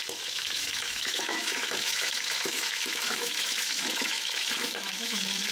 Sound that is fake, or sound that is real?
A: fake